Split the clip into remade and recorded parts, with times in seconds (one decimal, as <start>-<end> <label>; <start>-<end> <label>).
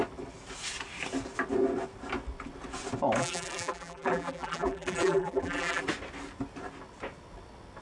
0.0-3.2 recorded; 3.2-5.8 remade; 5.8-7.8 recorded